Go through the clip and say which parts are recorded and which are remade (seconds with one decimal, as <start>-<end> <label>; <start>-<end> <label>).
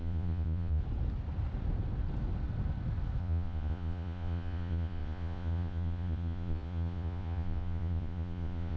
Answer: 0.0-0.8 remade; 0.8-3.2 recorded; 3.2-8.8 remade